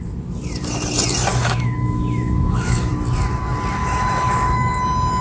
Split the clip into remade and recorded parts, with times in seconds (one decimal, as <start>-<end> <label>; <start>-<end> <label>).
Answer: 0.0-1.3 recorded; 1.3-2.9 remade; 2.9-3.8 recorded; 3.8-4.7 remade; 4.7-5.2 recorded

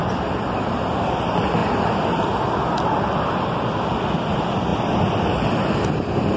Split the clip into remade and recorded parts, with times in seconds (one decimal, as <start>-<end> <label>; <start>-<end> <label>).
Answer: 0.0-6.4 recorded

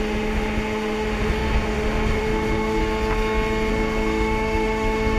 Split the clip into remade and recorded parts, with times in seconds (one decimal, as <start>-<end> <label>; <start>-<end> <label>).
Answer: 0.0-2.8 remade; 2.8-3.7 recorded; 3.7-5.2 remade

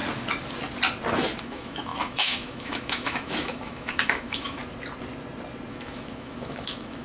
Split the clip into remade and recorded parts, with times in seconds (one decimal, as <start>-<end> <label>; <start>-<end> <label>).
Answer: 0.0-1.4 recorded; 1.4-4.6 remade; 4.6-5.7 recorded; 5.7-7.0 remade

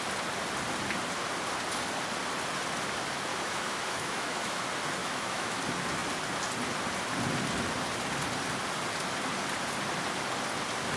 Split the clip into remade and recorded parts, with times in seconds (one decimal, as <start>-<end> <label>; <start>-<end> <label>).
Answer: 0.0-3.3 recorded; 3.3-4.6 remade; 4.6-5.0 recorded; 5.0-5.6 remade; 5.6-11.0 recorded

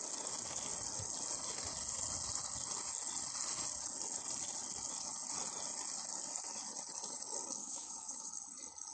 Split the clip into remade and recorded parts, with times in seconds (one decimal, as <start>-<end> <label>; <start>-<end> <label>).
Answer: 0.0-7.6 recorded; 7.6-8.3 remade; 8.3-8.9 recorded

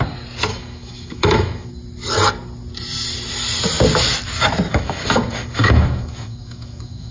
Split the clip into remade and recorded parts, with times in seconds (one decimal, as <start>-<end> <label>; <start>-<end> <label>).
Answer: 0.0-0.5 recorded; 0.5-1.7 remade; 1.7-4.7 recorded; 4.7-7.1 remade

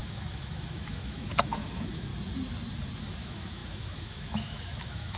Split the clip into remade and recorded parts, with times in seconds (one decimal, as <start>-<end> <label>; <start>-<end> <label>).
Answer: 0.0-2.1 remade; 2.1-3.0 recorded; 3.0-5.2 remade